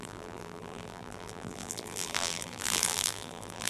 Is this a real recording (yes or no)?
no